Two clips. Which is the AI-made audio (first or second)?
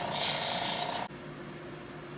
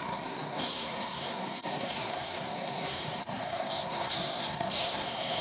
second